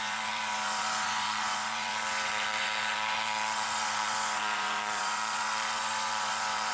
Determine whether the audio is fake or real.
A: fake